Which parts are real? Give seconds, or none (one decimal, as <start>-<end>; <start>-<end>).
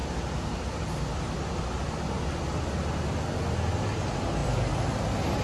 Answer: 0.0-5.4